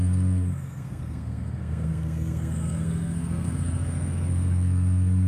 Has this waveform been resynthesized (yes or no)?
yes